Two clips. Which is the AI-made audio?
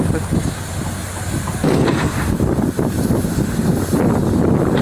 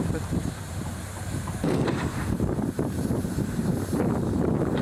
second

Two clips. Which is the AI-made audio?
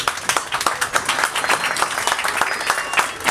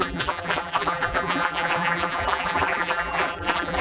second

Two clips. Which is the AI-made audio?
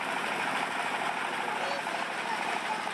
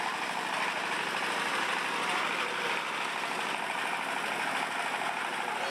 first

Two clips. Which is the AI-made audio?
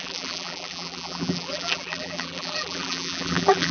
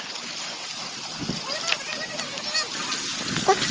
first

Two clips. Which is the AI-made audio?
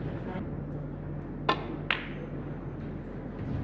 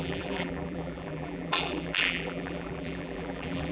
second